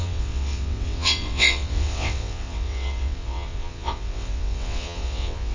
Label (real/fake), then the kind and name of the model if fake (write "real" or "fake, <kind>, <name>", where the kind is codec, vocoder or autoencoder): fake, vocoder, WaveNeXt